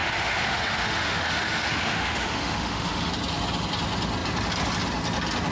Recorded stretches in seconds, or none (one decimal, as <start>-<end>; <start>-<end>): 3.1-5.5